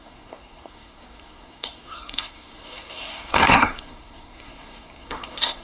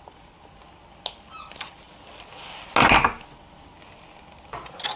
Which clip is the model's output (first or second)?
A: first